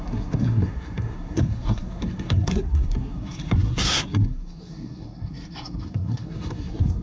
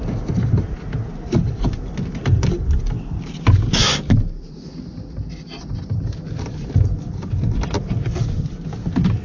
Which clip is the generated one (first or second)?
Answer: first